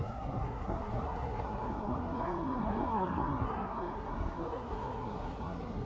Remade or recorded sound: remade